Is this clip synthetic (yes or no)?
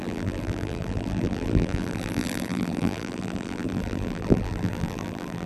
yes